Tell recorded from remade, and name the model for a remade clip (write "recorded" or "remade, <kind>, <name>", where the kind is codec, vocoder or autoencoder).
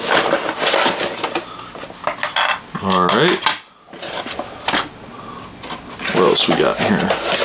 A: recorded